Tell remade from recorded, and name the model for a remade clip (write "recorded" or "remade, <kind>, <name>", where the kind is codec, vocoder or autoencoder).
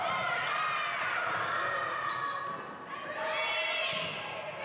recorded